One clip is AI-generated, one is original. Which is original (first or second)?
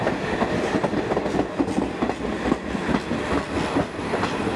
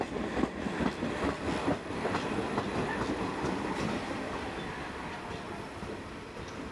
first